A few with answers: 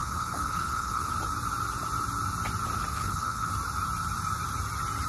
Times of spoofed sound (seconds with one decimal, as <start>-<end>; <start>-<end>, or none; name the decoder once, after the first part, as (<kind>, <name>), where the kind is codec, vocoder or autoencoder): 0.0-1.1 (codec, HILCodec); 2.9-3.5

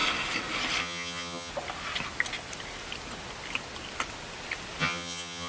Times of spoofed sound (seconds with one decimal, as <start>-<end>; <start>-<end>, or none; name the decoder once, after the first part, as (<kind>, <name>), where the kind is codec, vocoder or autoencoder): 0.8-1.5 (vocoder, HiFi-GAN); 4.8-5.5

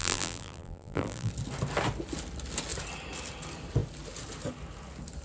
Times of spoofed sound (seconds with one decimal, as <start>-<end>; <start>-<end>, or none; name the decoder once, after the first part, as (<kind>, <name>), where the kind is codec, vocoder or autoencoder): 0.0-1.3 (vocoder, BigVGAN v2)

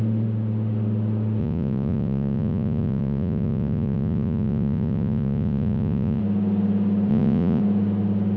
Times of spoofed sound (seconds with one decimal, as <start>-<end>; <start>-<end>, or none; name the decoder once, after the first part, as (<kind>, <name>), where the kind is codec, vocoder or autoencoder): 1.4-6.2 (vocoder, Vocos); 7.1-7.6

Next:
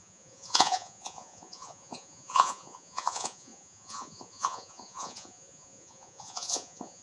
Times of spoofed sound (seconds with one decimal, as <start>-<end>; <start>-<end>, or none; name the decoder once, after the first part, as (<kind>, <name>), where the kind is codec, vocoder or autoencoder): 0.0-7.0 (vocoder, Vocos)